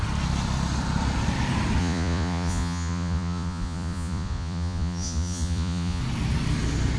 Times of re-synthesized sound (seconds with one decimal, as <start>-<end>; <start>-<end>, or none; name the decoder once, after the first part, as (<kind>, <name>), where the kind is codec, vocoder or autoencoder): 1.8-6.0 (vocoder, Vocos)

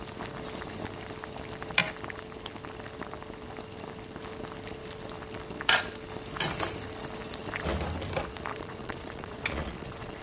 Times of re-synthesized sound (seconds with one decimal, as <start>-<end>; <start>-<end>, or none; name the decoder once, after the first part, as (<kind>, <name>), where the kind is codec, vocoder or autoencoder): 8.5-10.2 (vocoder, Vocos)

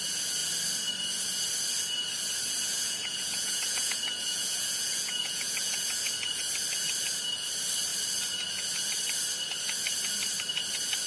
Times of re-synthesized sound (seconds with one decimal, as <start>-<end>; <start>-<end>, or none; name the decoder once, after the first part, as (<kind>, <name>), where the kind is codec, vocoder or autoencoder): 2.7-6.4 (vocoder, Vocos)

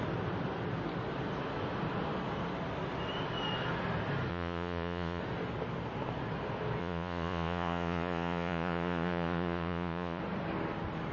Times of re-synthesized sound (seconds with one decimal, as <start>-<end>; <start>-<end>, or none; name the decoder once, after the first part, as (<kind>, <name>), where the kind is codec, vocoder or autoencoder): 4.3-5.2 (vocoder, Vocos); 6.8-10.2

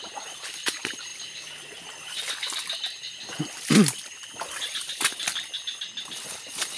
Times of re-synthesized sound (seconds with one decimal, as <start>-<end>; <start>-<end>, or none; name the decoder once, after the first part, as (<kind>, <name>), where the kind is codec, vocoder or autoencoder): none

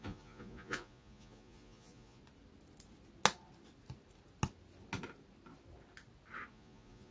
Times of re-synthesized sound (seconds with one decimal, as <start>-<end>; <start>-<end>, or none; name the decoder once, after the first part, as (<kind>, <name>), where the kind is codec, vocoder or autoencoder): 0.0-2.2 (vocoder, Vocos); 6.5-7.1